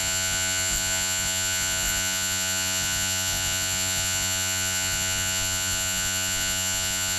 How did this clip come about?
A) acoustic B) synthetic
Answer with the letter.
B